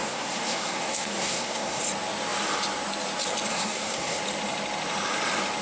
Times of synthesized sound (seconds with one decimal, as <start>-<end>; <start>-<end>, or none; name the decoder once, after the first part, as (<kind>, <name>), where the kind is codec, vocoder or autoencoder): 0.0-1.8 (codec, SNAC); 3.5-4.2